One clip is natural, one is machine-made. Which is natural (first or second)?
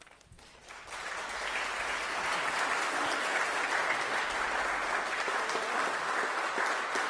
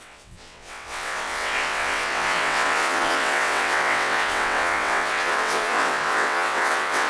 first